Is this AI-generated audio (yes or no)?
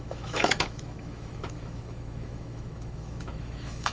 yes